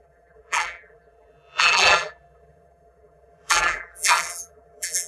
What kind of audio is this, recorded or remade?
remade